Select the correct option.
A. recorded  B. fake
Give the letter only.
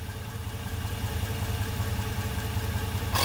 B